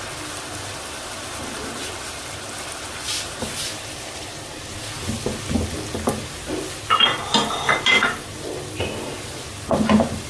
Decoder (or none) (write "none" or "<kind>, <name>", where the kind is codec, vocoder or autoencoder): none